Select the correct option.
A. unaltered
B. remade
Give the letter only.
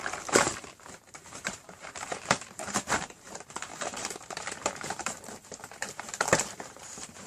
B